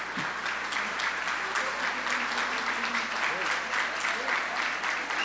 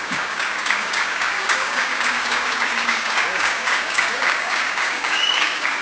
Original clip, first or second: first